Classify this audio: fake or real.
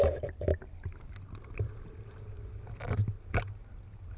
real